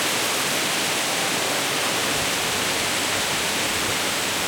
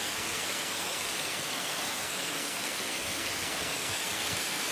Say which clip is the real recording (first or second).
first